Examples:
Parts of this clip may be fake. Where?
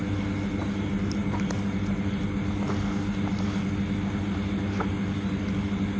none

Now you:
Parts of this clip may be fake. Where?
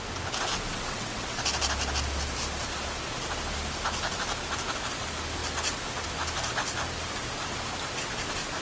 0.7-1.4 (vocoder, WaveNeXt)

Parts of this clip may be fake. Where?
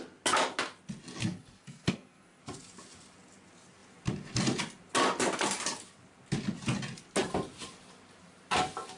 1.2-2.4 (codec, SNAC)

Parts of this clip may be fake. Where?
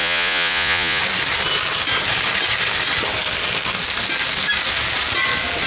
0.0-1.0 (vocoder, Vocos)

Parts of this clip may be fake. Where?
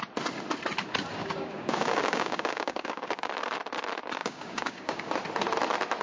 1.2-3.3 (codec, DAC); 4.2-5.1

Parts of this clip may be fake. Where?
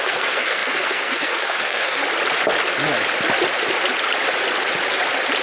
0.0-2.0 (codec, SNAC)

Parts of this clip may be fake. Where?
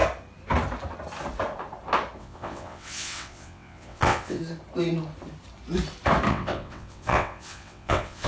2.2-4.4 (vocoder, WaveNeXt); 6.3-8.3